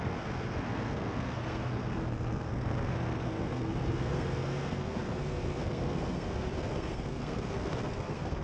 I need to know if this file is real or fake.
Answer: fake